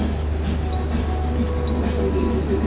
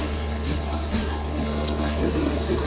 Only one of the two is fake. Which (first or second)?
second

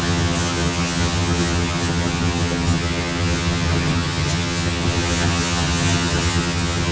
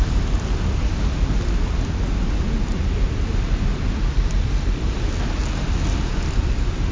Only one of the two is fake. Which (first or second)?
first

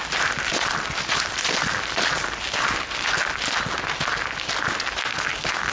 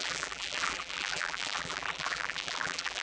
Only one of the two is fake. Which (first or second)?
second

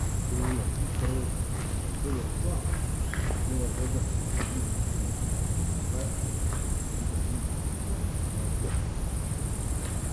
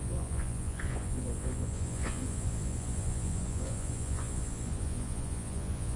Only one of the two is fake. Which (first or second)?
second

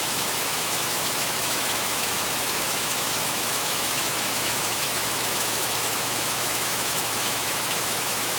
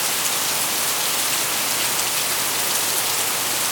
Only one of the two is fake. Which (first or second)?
first